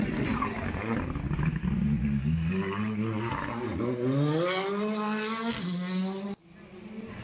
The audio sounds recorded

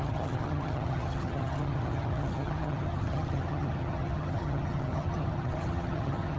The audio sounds remade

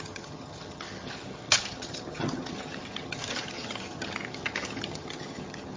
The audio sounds remade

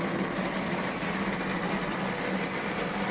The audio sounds recorded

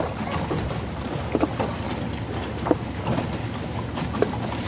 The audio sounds recorded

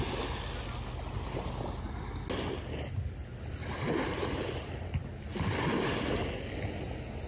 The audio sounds recorded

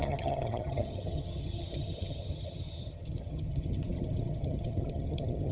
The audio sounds remade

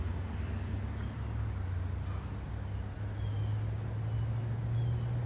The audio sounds recorded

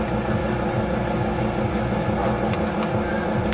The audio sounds recorded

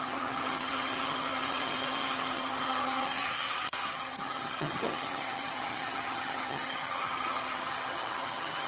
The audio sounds remade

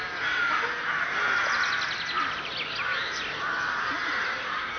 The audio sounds recorded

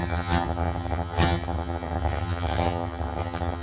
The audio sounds remade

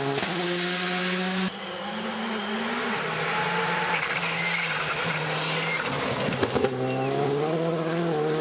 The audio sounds recorded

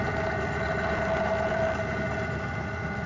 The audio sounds recorded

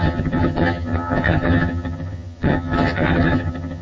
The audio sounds remade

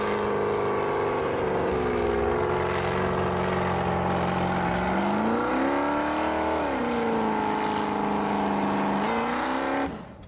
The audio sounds recorded